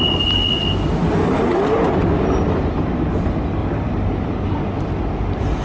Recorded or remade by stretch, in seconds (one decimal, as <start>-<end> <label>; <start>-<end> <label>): 0.0-3.6 recorded; 3.6-4.1 remade; 4.1-5.6 recorded